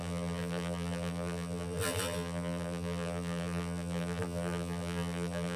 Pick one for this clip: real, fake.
fake